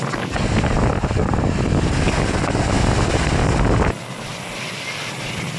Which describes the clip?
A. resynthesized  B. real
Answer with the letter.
B